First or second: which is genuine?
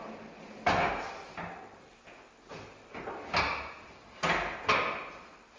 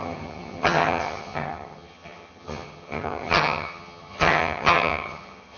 first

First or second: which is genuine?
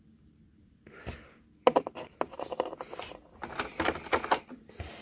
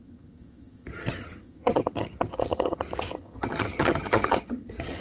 first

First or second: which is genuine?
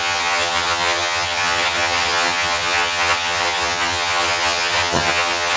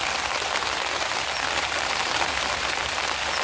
second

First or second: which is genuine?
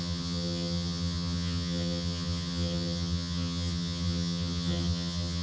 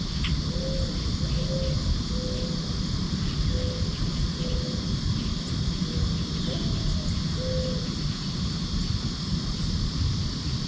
second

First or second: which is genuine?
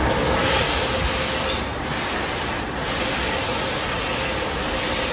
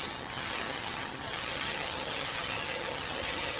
first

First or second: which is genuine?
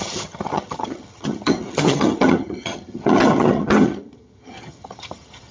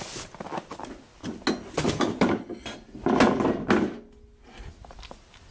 second